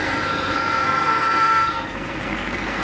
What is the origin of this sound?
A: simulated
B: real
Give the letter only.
A